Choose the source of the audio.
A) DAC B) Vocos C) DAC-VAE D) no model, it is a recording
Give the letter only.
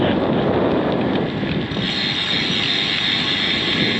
D